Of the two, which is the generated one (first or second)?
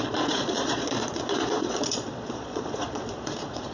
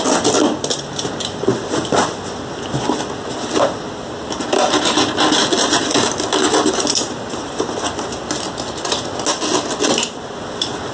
first